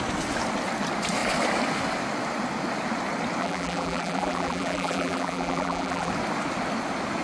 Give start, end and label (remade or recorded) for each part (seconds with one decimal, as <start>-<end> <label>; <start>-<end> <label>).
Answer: 0.0-3.4 recorded; 3.4-6.1 remade; 6.1-7.2 recorded